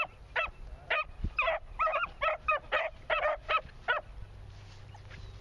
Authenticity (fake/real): real